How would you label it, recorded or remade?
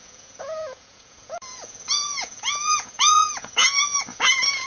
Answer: remade